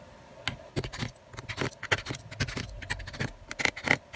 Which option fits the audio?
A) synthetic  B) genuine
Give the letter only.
B